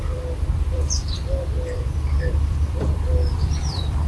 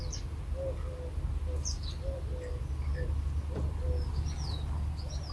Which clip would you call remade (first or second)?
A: first